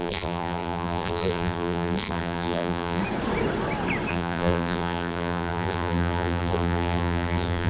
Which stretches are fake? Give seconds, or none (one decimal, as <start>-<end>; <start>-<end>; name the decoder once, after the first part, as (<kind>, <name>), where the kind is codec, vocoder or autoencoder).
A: 0.0-3.0 (vocoder, BigVGAN v2); 4.1-7.7